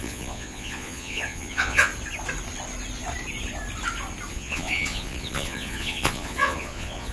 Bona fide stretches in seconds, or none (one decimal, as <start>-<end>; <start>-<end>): 1.9-4.3